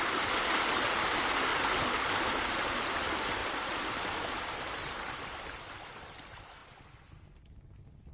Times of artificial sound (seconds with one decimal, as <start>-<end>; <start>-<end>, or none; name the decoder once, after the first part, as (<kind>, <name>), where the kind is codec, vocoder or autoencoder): 0.0-1.5 (vocoder, BigVGAN v2); 2.1-6.6

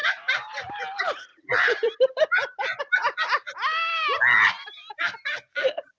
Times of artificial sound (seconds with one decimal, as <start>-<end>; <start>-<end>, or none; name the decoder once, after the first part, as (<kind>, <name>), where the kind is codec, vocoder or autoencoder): 0.0-0.8 (vocoder, BigVGAN v2); 1.3-2.8; 4.6-5.2

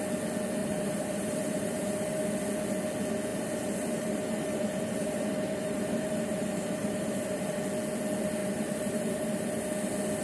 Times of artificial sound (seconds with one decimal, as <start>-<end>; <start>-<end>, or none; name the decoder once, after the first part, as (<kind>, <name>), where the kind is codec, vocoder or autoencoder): 0.6-2.2 (vocoder, BigVGAN v2); 3.3-7.6; 8.4-9.6

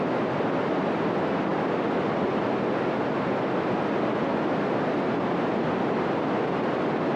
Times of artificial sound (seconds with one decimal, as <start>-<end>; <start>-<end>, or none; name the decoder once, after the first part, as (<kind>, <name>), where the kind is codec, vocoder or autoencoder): none

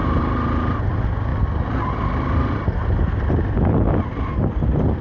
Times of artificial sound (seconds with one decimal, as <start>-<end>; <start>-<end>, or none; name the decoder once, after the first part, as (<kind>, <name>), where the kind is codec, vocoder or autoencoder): 0.0-0.9 (vocoder, BigVGAN v2)